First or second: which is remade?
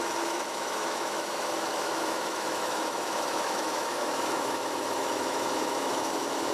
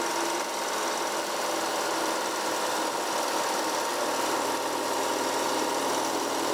first